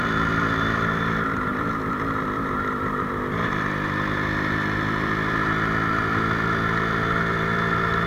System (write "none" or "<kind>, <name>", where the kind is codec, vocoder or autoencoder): vocoder, BigVGAN v2